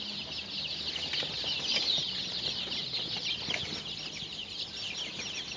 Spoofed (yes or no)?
no